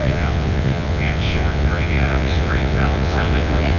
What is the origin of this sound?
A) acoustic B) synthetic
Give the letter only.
B